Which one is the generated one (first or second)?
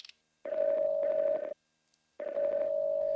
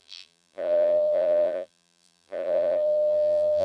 second